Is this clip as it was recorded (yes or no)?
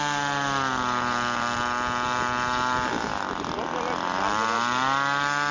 yes